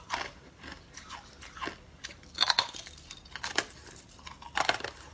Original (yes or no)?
yes